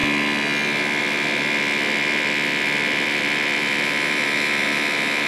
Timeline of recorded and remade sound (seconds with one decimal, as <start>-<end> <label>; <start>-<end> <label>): 0.0-1.0 recorded; 1.0-5.3 remade